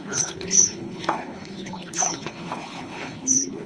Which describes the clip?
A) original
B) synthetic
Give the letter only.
B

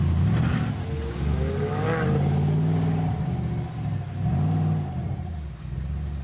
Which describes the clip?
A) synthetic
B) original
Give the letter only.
B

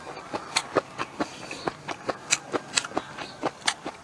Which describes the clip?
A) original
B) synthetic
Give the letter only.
A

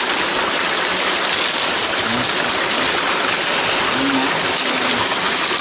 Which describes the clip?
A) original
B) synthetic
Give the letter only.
A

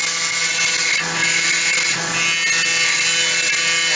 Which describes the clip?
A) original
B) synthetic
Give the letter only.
A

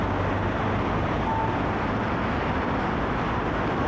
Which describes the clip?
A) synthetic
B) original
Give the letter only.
B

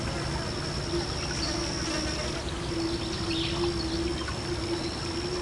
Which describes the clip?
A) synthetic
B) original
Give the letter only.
B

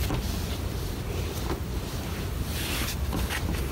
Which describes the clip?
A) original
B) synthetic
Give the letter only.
A